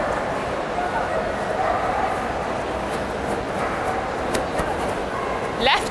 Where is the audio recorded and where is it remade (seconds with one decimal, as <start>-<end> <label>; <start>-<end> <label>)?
0.0-5.0 recorded; 5.0-5.5 remade; 5.5-5.9 recorded